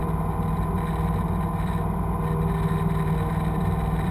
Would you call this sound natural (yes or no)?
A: yes